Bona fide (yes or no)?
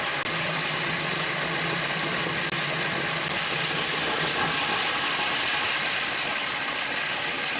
yes